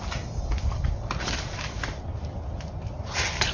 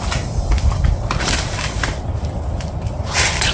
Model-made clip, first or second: second